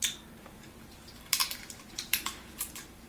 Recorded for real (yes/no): no